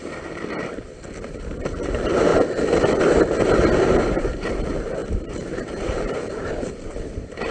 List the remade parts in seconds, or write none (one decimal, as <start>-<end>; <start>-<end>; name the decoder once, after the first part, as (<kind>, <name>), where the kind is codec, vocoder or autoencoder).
1.2-2.3 (vocoder, BigVGAN v2); 4.2-7.5